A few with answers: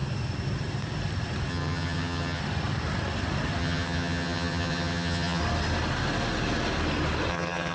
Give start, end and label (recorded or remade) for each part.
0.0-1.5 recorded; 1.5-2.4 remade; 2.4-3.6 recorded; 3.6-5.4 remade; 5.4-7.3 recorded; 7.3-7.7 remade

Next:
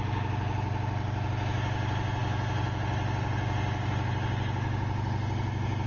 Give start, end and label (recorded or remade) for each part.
0.0-5.9 recorded

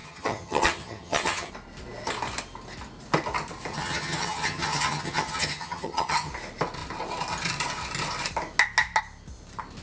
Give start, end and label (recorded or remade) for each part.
0.0-1.5 remade; 1.5-3.7 recorded; 3.7-6.3 remade; 6.3-9.8 recorded

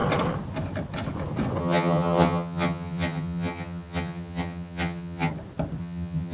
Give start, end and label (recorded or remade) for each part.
0.0-1.6 recorded; 1.6-5.3 remade; 5.3-5.8 recorded; 5.8-6.3 remade

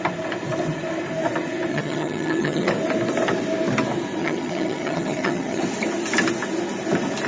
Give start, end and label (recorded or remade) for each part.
0.0-1.7 recorded; 1.7-2.7 remade; 2.7-4.2 recorded; 4.2-5.6 remade; 5.6-7.3 recorded

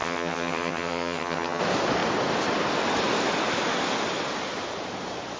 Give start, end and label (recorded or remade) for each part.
0.0-1.6 remade; 1.6-5.4 recorded

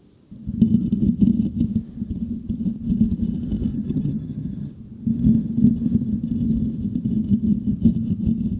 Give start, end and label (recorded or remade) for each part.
0.0-3.7 recorded; 3.7-4.7 remade; 4.7-8.6 recorded

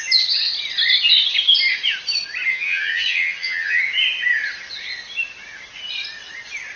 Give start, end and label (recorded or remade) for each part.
0.0-2.5 recorded; 2.5-3.8 remade; 3.8-6.8 recorded